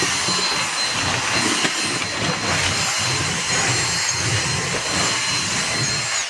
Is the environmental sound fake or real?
real